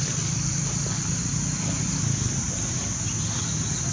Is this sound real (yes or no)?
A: yes